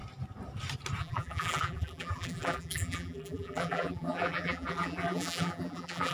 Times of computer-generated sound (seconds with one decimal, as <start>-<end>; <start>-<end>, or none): 1.0-6.1